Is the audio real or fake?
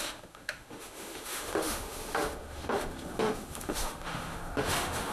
fake